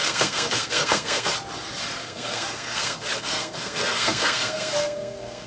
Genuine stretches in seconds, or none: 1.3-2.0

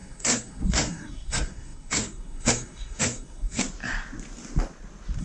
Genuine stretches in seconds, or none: 3.6-5.2

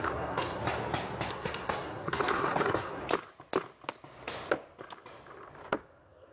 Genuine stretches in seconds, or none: 0.6-1.3; 3.0-5.8

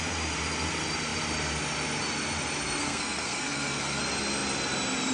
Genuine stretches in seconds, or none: 0.0-2.8; 4.0-5.1

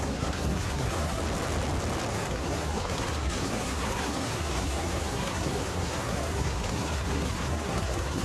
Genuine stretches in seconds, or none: 1.2-2.1

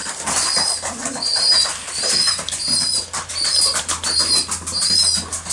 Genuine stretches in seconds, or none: 0.0-5.5